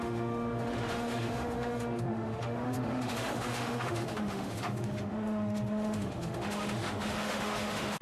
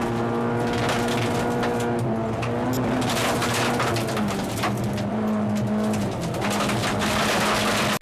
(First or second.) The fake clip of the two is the first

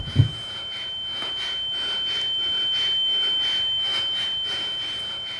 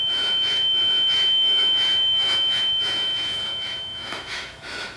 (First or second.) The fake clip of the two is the second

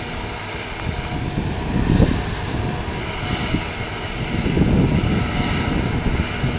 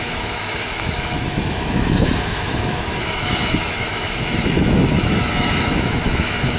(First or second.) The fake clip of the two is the second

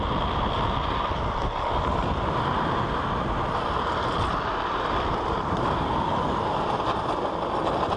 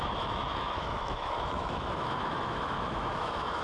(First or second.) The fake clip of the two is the second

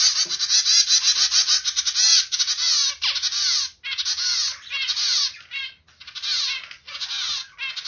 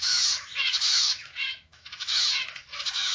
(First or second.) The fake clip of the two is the second